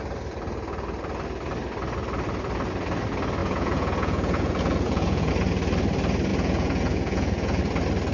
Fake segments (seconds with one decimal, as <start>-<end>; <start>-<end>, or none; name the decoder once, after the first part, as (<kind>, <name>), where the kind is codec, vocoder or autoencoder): 3.4-5.3 (vocoder, Vocos); 6.3-7.6